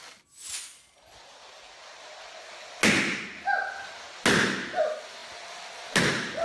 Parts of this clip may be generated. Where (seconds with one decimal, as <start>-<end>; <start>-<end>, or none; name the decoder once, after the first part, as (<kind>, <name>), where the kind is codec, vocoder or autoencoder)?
none